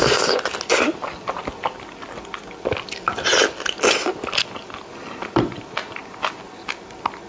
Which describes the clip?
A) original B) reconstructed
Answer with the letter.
A